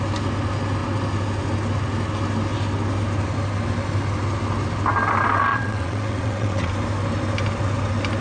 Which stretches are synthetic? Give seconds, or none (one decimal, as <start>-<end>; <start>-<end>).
5.5-6.7

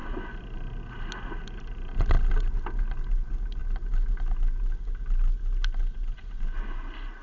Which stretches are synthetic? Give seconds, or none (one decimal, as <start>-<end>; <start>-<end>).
none

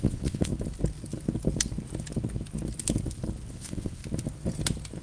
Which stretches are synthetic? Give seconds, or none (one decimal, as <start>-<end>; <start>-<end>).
0.0-0.5; 3.5-4.0